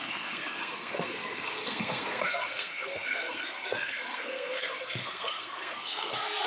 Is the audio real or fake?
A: fake